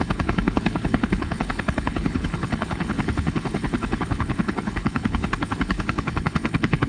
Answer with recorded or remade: remade